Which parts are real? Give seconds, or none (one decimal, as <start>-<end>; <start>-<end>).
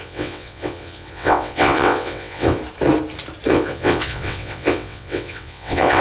2.6-3.5